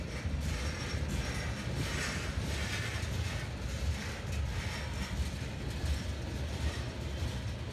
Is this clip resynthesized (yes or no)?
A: no